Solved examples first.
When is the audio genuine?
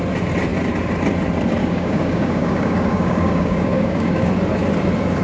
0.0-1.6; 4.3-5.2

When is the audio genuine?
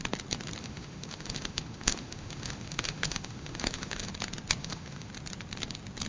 0.0-0.6; 4.1-4.6; 5.1-6.1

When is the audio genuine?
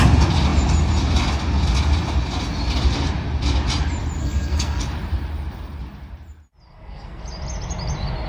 0.0-4.2; 4.8-6.7; 7.2-8.3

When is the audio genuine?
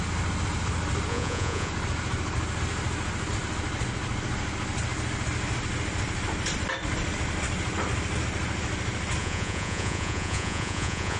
0.0-1.1; 1.7-9.2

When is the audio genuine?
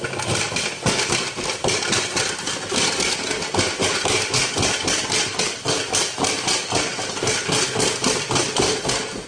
0.0-9.3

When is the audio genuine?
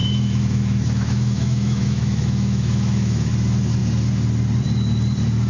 3.3-5.5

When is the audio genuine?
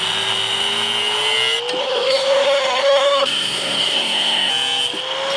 0.0-1.8; 4.5-5.4